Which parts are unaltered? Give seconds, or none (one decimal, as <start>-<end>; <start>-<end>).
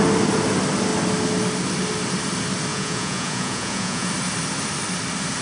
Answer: 0.0-2.7; 4.1-5.4